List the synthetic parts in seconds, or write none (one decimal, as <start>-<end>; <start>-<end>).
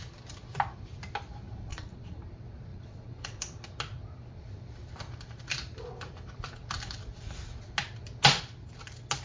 1.7-2.2; 2.7-3.4